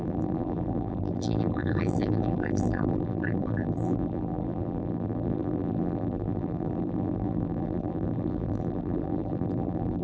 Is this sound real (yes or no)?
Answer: no